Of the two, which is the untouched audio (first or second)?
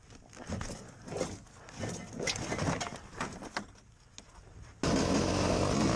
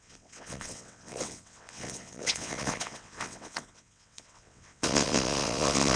first